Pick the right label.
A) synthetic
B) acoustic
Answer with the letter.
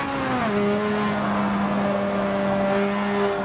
B